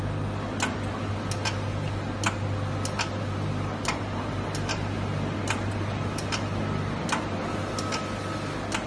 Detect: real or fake real